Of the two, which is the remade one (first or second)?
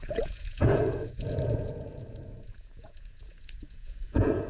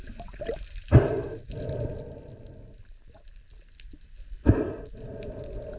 first